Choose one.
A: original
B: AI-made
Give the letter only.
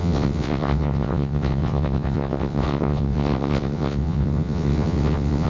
B